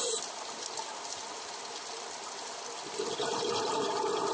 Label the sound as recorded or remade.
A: recorded